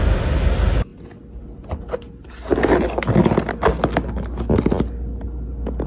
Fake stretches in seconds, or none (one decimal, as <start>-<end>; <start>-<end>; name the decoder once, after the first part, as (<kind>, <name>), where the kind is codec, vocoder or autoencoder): none